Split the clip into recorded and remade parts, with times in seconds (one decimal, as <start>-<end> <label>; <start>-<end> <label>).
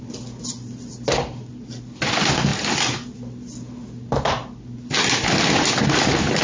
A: 0.0-6.4 recorded